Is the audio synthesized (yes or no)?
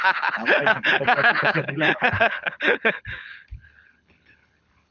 yes